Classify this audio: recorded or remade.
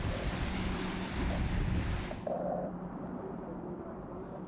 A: remade